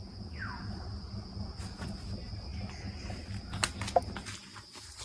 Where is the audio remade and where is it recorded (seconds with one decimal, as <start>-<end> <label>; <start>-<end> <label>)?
0.0-5.0 recorded